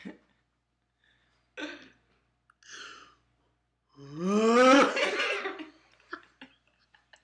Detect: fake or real real